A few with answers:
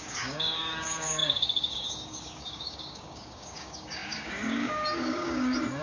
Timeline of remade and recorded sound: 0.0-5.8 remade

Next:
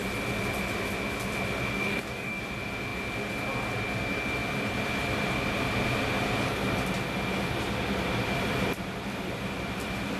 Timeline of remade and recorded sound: 0.0-1.7 recorded; 1.7-2.4 remade; 2.4-10.2 recorded

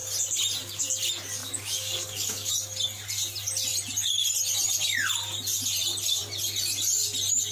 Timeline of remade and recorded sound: 0.0-1.4 recorded; 1.4-2.5 remade; 2.5-7.5 recorded

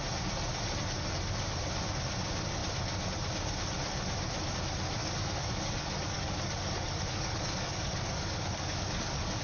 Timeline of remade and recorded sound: 0.0-5.0 recorded; 5.0-9.4 remade